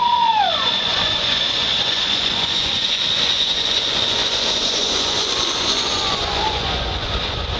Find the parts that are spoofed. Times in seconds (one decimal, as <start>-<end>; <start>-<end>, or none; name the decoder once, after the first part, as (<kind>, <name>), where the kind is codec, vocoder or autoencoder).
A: 0.0-7.6 (vocoder, Vocos)